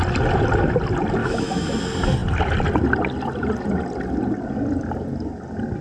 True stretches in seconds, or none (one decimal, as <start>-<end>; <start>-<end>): 0.0-1.2; 1.8-5.8